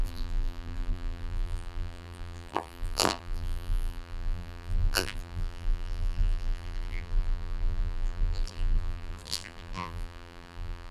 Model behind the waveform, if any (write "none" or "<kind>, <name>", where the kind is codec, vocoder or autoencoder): vocoder, BigVGAN v2